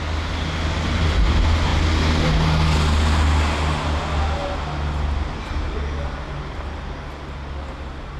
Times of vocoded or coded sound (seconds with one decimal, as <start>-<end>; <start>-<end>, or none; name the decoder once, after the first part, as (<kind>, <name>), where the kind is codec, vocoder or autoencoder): none